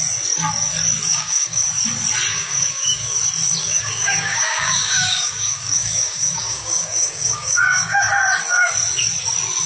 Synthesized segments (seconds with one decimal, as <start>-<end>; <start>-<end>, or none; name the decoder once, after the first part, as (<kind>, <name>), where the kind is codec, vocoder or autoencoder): 1.1-1.7 (codec, DAC); 2.3-3.2; 3.6-8.1